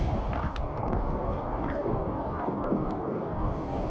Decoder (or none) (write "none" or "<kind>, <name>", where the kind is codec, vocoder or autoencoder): codec, DAC